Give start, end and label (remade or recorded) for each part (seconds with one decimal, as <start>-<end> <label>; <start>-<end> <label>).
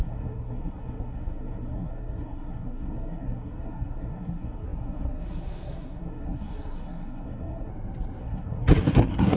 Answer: 0.0-7.7 remade; 7.7-8.2 recorded; 8.2-9.4 remade